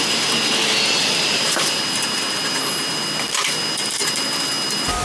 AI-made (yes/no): no